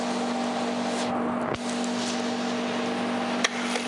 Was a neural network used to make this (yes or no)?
no